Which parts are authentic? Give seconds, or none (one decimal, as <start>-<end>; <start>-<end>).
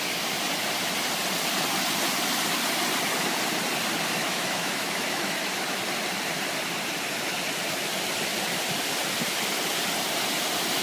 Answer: 0.0-4.2; 5.8-10.8